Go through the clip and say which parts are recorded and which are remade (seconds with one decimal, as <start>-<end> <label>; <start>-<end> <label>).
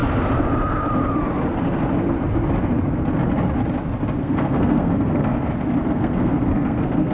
0.0-4.2 recorded; 4.2-5.3 remade; 5.3-5.9 recorded; 5.9-7.1 remade